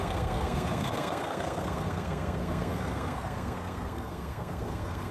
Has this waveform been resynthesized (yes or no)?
yes